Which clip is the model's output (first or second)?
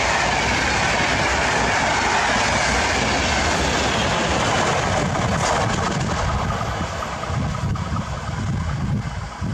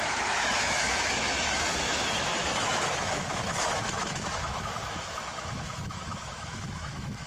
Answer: second